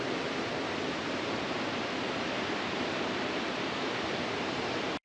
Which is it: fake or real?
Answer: fake